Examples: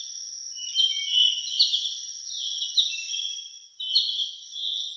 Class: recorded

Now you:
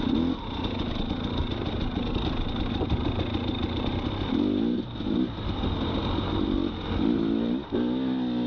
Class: recorded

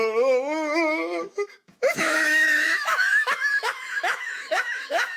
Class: remade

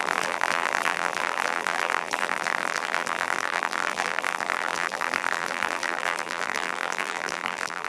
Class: remade